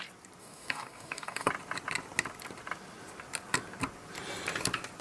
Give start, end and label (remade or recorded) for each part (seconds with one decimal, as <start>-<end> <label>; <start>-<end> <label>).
0.0-0.4 recorded; 0.4-1.5 remade; 1.5-5.0 recorded